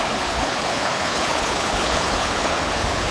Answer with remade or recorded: remade